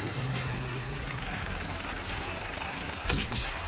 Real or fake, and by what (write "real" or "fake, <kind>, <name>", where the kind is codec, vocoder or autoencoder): fake, codec, SNAC